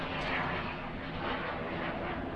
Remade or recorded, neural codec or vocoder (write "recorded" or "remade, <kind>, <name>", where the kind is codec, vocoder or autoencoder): recorded